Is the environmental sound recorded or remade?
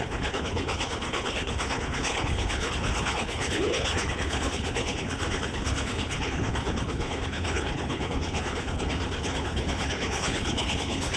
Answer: remade